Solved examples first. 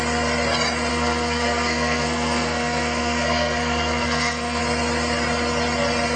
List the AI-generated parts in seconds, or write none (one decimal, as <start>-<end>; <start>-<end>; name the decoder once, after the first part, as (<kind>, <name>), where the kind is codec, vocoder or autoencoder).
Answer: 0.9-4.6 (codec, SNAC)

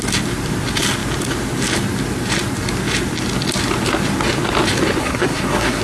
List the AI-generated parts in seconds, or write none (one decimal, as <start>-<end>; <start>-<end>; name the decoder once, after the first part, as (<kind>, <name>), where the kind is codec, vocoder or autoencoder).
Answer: 5.0-5.8 (codec, SNAC)

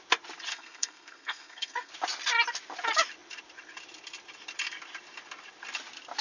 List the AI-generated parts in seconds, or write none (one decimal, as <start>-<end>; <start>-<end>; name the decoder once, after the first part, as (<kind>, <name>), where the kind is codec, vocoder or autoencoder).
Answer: 0.5-1.9 (codec, SNAC)

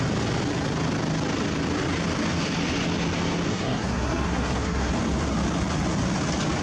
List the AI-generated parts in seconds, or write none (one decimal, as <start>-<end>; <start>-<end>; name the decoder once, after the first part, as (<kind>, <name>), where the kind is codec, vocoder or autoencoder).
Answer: 3.5-4.9 (codec, SNAC)

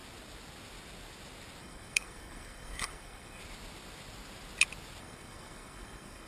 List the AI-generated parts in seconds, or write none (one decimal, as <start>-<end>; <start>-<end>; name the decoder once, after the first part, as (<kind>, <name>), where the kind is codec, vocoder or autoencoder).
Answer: 1.6-3.4 (codec, SNAC); 5.0-6.3

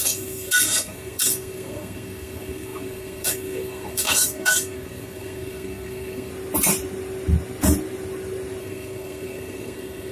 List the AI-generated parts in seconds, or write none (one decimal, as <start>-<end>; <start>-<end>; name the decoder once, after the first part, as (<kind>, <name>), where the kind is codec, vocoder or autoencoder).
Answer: 0.0-6.3 (codec, SNAC); 8.6-10.1

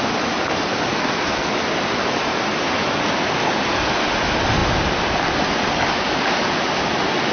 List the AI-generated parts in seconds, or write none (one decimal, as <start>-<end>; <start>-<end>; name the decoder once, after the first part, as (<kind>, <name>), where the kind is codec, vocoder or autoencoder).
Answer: 0.9-1.5 (codec, SNAC)